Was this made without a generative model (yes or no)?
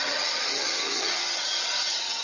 no